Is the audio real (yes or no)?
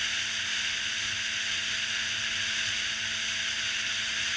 yes